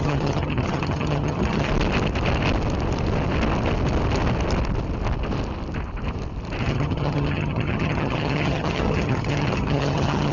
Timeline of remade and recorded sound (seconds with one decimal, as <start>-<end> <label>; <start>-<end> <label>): 0.0-1.7 remade; 1.7-6.6 recorded; 6.6-10.3 remade